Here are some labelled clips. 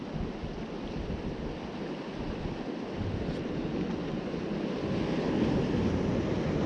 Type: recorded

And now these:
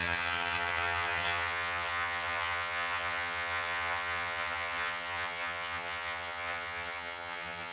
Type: remade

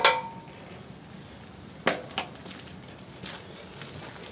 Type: recorded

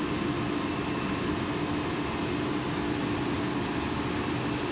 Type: recorded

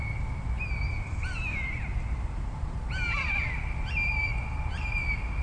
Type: recorded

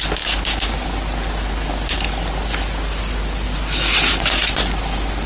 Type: recorded